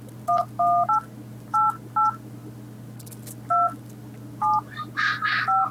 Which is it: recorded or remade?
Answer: recorded